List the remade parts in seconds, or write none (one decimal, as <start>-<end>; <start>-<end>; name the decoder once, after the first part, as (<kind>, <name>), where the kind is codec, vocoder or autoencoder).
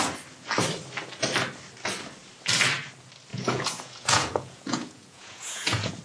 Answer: 3.3-6.0 (vocoder, Vocos)